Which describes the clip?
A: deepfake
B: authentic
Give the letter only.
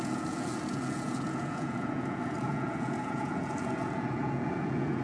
A